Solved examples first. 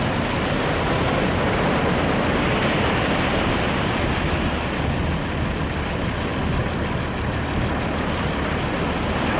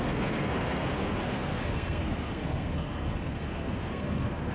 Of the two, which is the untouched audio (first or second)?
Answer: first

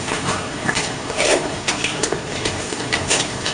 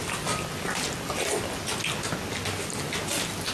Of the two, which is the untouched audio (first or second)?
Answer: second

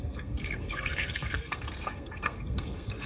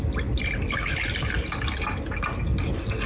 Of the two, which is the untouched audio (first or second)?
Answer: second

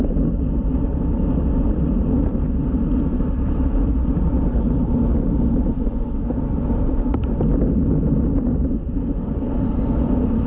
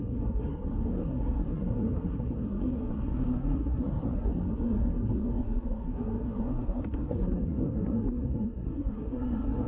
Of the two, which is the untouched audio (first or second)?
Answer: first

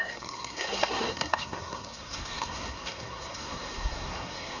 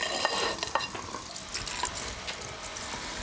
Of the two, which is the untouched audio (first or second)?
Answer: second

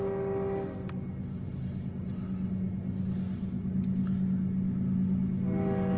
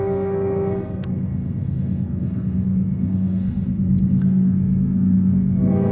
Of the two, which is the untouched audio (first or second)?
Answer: first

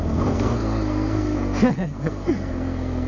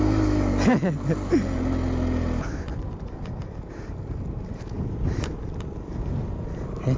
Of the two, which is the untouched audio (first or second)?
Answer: second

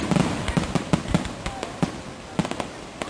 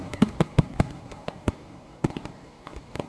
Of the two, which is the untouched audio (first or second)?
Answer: first